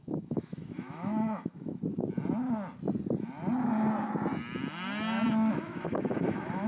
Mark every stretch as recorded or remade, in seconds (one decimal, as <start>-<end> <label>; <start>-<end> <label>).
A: 0.0-1.8 remade; 1.8-5.5 recorded; 5.5-6.7 remade